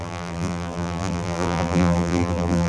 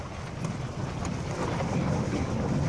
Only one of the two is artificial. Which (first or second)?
first